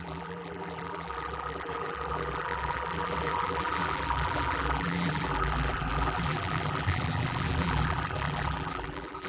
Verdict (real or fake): fake